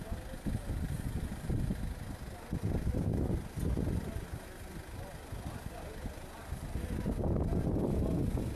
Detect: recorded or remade recorded